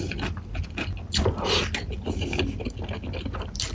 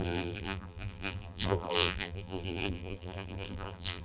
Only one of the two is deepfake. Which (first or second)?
second